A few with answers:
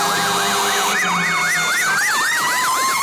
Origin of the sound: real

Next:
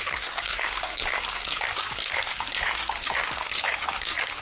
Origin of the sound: fake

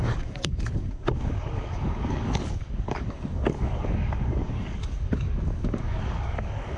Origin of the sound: fake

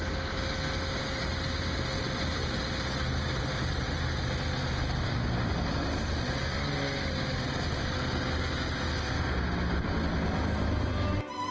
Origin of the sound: real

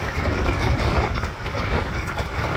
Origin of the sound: fake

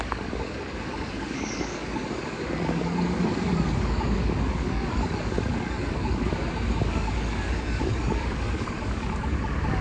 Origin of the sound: fake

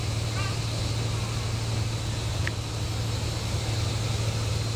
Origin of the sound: real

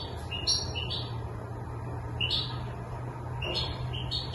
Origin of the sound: real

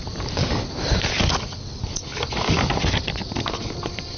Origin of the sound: real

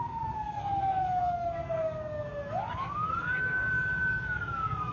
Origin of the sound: fake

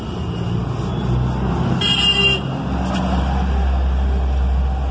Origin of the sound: real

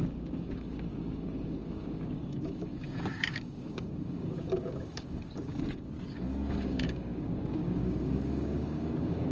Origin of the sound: fake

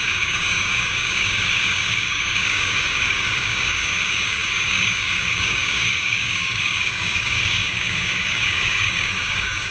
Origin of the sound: fake